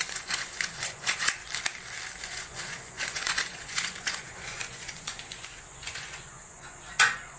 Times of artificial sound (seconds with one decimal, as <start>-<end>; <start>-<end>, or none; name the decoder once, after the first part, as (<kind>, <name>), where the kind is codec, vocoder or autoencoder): 0.0-1.4 (vocoder, Vocos); 2.2-7.4